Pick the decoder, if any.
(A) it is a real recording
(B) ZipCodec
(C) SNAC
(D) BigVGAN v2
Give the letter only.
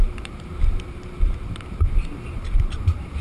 D